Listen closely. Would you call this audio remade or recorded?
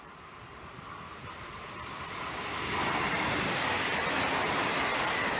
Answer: recorded